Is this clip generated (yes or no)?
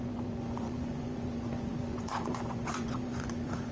yes